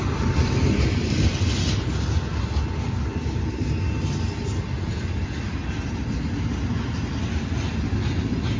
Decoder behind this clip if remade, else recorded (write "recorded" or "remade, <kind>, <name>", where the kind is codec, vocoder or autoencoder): recorded